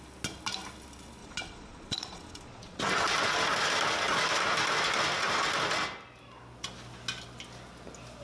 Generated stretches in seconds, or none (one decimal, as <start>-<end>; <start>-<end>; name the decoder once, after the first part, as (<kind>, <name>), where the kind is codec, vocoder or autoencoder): 1.2-2.8 (vocoder, Vocos)